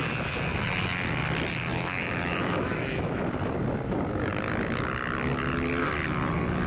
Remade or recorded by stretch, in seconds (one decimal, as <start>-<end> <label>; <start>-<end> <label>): 0.0-1.7 recorded; 1.7-3.2 remade; 3.2-6.7 recorded